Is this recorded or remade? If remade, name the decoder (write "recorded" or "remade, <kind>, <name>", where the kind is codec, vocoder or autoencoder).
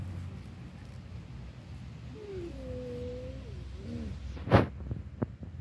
recorded